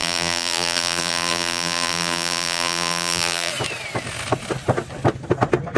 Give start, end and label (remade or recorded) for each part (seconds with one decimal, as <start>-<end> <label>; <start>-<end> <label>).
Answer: 0.0-3.5 remade; 3.5-5.8 recorded